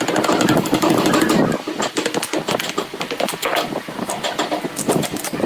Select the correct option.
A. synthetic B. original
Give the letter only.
B